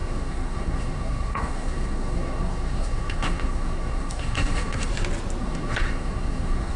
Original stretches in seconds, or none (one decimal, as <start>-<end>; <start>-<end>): 4.9-5.4